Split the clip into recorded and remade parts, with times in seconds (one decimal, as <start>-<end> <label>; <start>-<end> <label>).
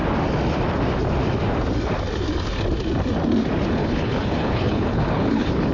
0.0-3.8 recorded; 3.8-5.7 remade